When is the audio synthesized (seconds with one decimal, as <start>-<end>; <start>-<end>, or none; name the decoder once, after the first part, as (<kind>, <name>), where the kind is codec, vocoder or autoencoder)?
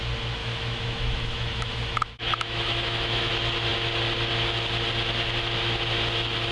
0.4-3.3 (autoencoder, DAC-VAE)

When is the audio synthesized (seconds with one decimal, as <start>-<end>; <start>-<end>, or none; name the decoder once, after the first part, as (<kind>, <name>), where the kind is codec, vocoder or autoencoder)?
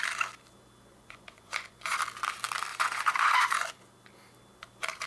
0.9-2.0 (vocoder, Vocos); 2.7-3.8